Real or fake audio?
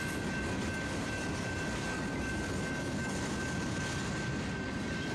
real